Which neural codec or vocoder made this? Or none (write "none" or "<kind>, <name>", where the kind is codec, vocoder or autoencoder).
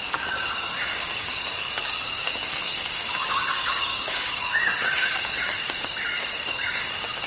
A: codec, DAC